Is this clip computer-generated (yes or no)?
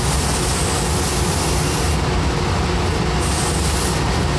no